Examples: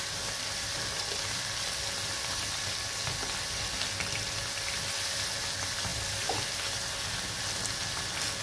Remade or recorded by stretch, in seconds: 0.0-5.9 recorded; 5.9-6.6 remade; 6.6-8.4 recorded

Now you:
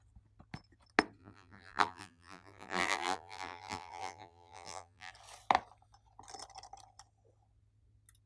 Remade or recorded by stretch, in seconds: 0.0-1.2 recorded; 1.2-5.1 remade; 5.1-8.3 recorded

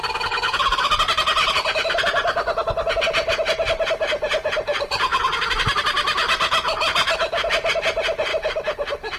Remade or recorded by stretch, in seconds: 0.0-8.3 recorded; 8.3-9.2 remade

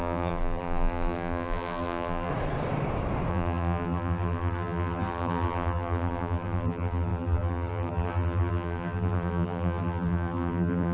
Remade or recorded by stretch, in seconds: 0.0-2.3 remade; 2.3-3.3 recorded; 3.3-10.9 remade

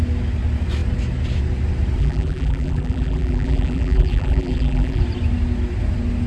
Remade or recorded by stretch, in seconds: 0.0-2.0 recorded; 2.0-5.0 remade; 5.0-6.3 recorded

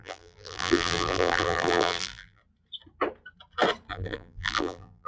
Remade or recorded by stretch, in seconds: 0.0-2.4 remade; 2.4-3.9 recorded; 3.9-5.1 remade

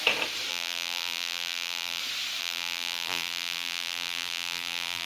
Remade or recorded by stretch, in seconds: 0.0-0.5 recorded; 0.5-2.0 remade; 2.0-2.4 recorded; 2.4-5.1 remade